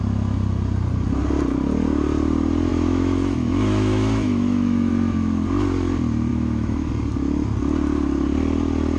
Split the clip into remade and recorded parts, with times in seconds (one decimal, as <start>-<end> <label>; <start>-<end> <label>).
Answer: 0.0-2.7 recorded; 2.7-4.9 remade; 4.9-6.3 recorded; 6.3-6.9 remade; 6.9-9.0 recorded